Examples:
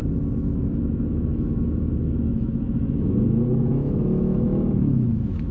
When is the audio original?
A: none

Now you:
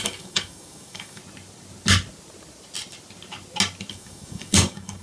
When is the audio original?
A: 1.2-3.9

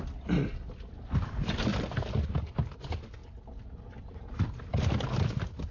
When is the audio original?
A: 0.0-5.7